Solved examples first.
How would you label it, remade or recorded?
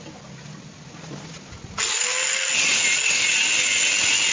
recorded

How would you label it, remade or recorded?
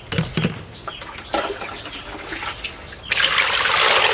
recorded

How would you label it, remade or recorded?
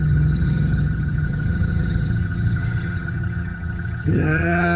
remade